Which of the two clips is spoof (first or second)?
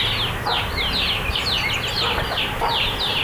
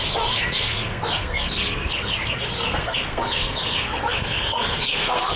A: second